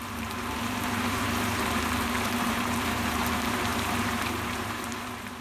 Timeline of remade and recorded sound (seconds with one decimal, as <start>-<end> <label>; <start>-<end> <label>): 0.0-5.4 remade